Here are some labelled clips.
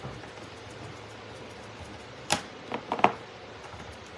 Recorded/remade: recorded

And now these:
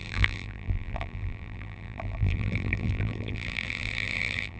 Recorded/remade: remade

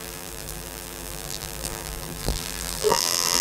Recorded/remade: remade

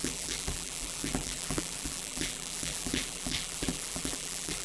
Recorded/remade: remade